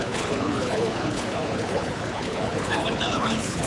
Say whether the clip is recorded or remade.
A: remade